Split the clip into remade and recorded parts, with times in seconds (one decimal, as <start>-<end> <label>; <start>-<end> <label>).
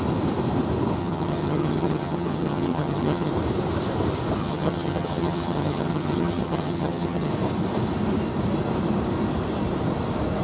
0.0-1.0 recorded; 1.0-3.3 remade; 3.3-4.4 recorded; 4.4-7.3 remade; 7.3-10.4 recorded